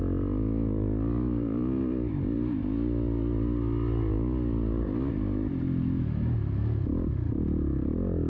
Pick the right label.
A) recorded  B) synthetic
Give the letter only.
A